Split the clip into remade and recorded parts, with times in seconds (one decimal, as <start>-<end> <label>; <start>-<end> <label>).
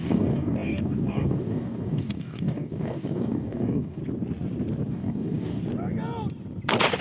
0.0-4.0 remade; 4.0-4.9 recorded; 4.9-5.6 remade; 5.6-7.0 recorded